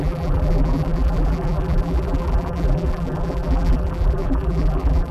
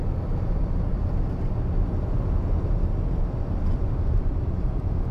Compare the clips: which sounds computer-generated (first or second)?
first